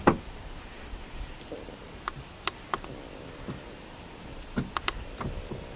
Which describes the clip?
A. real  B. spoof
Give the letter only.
A